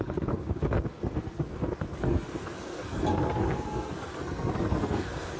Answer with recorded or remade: remade